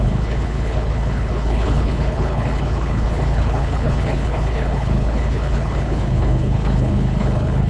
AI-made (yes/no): yes